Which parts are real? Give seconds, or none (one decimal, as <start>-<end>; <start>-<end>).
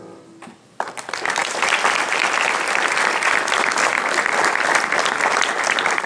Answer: none